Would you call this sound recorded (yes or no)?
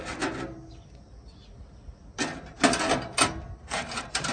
yes